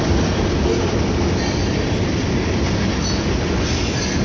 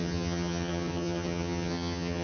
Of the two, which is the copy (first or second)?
second